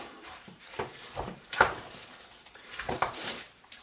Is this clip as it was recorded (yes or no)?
no